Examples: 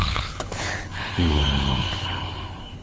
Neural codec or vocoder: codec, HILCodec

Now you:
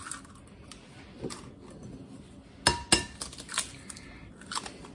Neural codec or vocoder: none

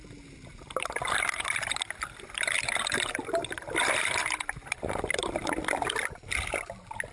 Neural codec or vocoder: none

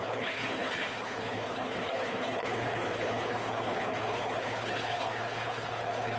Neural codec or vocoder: codec, HILCodec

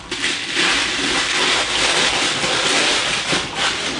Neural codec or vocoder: none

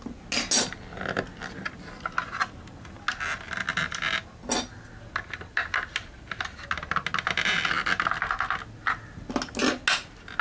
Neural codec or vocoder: none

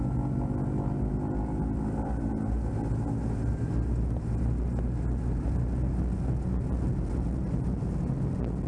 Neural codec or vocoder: none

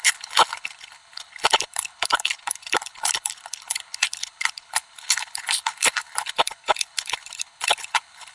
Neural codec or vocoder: codec, HILCodec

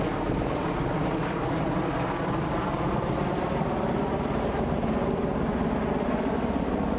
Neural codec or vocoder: none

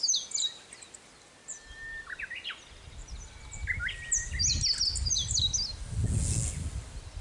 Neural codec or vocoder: none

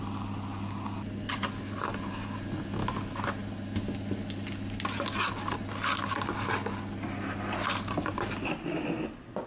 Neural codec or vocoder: none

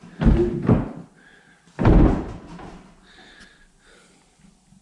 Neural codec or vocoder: none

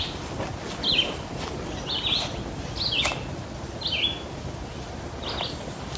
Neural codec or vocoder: none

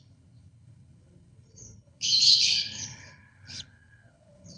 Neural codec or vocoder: codec, HILCodec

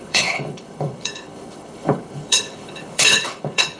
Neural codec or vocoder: codec, HILCodec